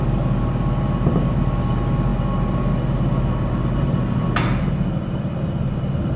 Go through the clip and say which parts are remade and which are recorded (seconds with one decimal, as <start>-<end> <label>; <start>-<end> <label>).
0.0-6.2 recorded